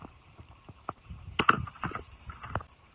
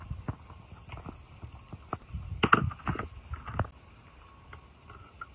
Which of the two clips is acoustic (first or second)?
second